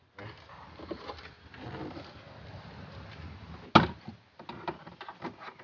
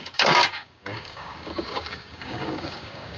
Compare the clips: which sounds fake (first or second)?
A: second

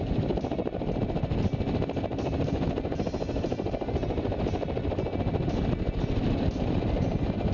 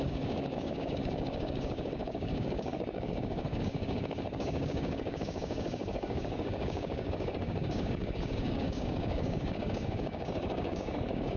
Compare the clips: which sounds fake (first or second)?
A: second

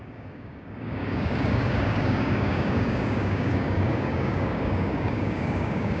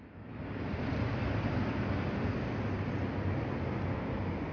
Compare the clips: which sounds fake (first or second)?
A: first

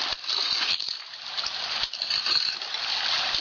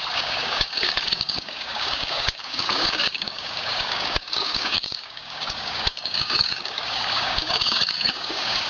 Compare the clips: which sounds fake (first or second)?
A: second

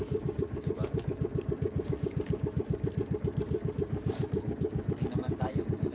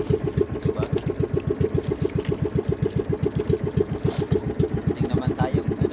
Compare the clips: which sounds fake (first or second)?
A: first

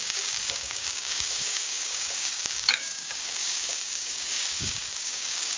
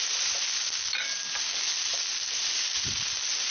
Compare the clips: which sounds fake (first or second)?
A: first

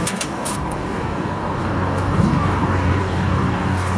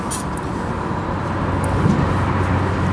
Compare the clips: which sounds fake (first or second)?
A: first